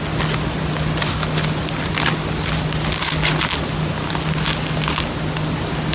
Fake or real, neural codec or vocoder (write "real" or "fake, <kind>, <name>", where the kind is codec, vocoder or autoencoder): real